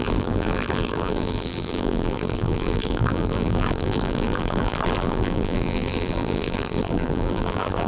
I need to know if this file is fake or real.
fake